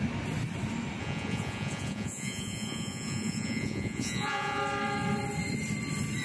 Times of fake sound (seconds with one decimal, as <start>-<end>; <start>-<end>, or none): 1.0-4.6